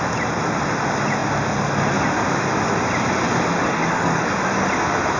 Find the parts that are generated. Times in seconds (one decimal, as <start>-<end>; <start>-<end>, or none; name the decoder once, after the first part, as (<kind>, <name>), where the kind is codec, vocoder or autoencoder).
3.7-4.3 (codec, DAC)